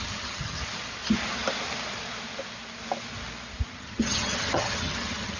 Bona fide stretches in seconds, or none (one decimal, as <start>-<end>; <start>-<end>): 0.6-3.8